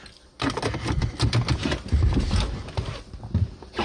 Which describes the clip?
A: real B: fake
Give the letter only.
A